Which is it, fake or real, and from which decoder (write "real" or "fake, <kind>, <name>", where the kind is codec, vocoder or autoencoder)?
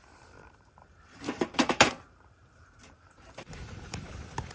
fake, vocoder, BigVGAN v2